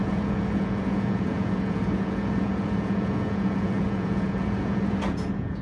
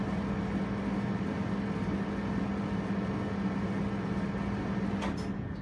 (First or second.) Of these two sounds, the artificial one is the first